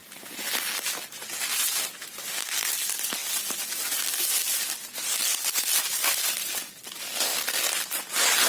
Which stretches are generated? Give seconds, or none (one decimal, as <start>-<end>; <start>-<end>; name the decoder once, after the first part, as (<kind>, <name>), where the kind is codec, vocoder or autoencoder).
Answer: none